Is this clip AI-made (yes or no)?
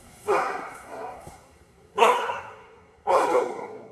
yes